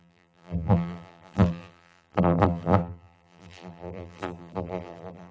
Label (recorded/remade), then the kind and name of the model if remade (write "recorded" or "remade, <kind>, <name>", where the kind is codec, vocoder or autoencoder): remade, vocoder, BigVGAN v2